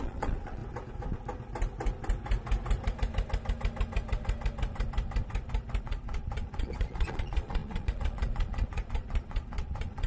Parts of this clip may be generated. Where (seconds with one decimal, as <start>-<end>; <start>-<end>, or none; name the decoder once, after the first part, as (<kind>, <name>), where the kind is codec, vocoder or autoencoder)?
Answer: 0.0-0.6 (vocoder, Vocos); 5.8-10.1